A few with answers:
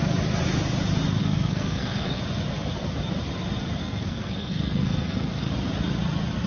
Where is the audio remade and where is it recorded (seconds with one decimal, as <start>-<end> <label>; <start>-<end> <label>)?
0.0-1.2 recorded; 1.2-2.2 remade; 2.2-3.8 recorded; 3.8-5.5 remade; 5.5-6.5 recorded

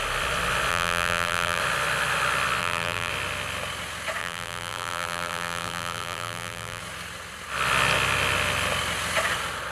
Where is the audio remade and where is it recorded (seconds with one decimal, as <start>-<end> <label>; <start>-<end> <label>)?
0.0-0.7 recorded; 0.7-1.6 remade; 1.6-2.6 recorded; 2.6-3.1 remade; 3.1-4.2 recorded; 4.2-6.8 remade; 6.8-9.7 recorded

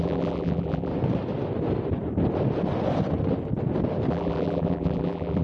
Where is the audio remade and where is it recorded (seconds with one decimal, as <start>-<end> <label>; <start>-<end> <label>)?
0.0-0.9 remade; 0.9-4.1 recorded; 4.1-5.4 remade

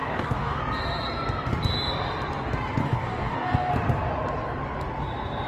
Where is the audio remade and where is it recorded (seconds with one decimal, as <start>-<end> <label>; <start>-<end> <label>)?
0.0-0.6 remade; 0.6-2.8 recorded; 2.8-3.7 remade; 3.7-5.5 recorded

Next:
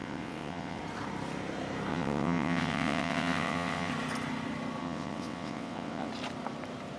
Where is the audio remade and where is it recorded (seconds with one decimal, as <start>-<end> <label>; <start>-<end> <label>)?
0.0-0.8 remade; 0.8-1.9 recorded; 1.9-3.9 remade; 3.9-4.8 recorded; 4.8-6.1 remade; 6.1-7.0 recorded